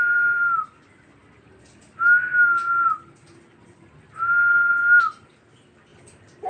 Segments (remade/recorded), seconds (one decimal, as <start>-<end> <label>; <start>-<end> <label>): 0.0-6.5 recorded